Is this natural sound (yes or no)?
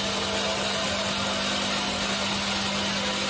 yes